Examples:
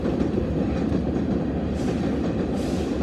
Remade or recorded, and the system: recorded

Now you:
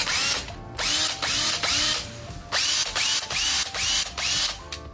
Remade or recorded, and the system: recorded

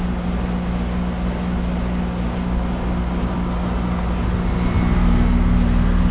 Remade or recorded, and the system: recorded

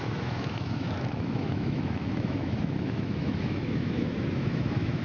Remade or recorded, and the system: remade, autoencoder, DAC-VAE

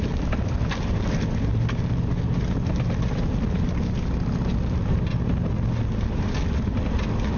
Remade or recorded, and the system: recorded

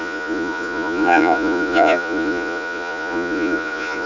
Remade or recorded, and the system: remade, vocoder, Vocos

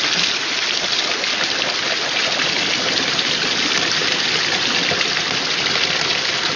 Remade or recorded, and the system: recorded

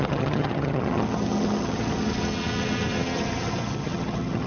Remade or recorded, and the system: remade, vocoder, HiFi-GAN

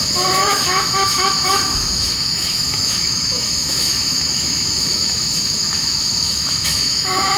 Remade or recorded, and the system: remade, autoencoder, DAC-VAE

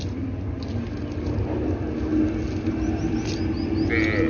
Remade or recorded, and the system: recorded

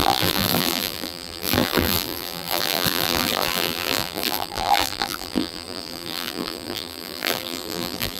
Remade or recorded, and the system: remade, vocoder, BigVGAN v2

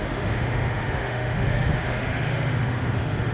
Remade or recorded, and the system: remade, autoencoder, DAC-VAE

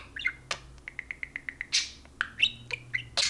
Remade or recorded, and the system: recorded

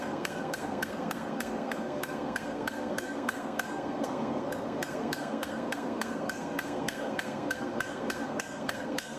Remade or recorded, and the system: remade, codec, SNAC